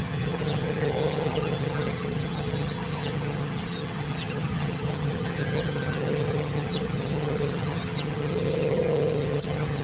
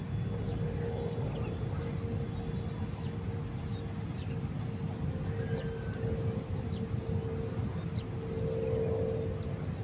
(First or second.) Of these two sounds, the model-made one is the first